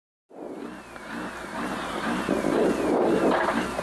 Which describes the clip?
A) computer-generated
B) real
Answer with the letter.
B